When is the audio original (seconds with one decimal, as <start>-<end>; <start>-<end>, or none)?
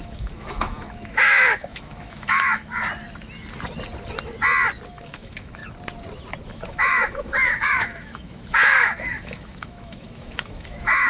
2.8-4.9; 5.6-6.5